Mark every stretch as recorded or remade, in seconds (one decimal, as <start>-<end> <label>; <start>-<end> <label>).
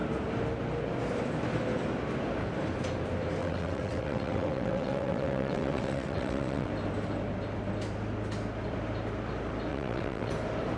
0.0-3.4 recorded; 3.4-6.7 remade; 6.7-9.7 recorded; 9.7-10.3 remade; 10.3-10.8 recorded